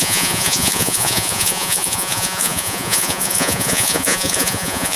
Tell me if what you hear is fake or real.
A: fake